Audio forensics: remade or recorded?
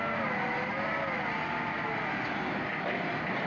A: recorded